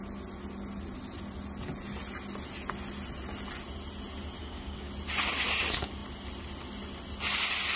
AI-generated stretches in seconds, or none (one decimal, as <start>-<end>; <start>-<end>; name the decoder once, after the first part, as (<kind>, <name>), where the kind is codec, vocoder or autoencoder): 4.4-4.9 (codec, DAC)